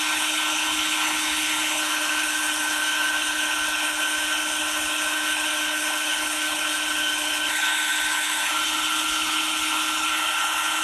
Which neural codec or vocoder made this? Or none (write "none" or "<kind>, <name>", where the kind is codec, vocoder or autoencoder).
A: codec, HILCodec